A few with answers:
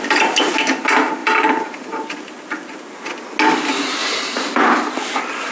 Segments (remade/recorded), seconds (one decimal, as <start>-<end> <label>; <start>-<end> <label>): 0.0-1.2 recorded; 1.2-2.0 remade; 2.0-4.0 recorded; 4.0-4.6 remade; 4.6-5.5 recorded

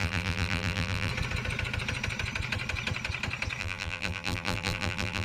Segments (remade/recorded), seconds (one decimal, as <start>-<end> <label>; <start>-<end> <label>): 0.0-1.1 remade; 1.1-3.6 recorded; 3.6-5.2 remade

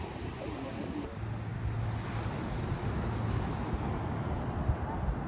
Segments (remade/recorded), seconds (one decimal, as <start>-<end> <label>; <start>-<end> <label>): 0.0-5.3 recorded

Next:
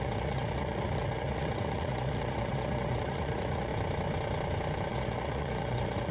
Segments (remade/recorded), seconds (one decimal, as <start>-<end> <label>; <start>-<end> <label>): 0.0-3.7 remade; 3.7-4.9 recorded; 4.9-6.1 remade